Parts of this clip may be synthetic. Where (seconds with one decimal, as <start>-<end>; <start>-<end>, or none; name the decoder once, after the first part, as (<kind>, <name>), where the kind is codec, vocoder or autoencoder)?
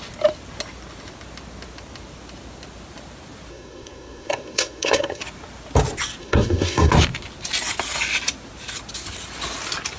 3.5-5.2 (codec, SNAC); 6.2-6.9